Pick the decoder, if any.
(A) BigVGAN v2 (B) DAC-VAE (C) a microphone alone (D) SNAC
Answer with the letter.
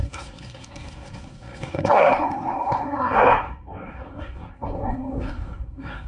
D